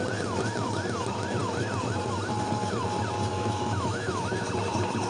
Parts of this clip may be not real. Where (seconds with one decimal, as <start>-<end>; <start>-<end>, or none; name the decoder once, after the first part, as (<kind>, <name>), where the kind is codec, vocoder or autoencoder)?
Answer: 3.3-4.4 (autoencoder, DAC-VAE)